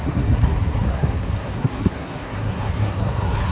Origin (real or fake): fake